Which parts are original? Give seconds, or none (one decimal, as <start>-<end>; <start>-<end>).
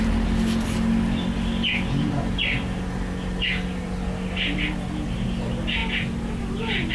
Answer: 0.0-6.9